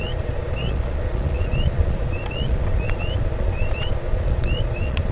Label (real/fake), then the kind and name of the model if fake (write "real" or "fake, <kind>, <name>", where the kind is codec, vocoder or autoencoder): fake, vocoder, Vocos